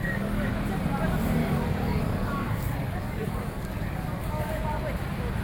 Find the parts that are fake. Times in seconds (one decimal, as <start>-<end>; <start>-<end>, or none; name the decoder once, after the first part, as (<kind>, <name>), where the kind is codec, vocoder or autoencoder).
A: 0.0-0.5 (codec, DAC); 1.4-4.6